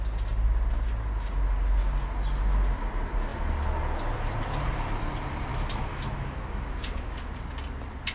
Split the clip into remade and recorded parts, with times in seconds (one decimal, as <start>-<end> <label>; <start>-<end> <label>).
0.0-5.5 recorded; 5.5-7.3 remade; 7.3-8.1 recorded